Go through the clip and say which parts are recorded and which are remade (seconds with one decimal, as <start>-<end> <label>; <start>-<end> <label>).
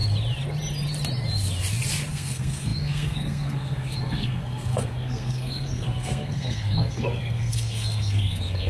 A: 0.0-2.1 recorded; 2.1-8.7 remade